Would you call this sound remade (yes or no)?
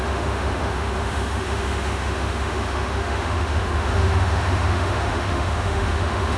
yes